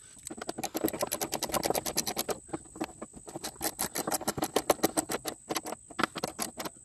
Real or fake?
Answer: real